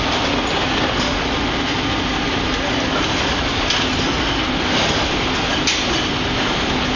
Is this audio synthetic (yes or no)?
no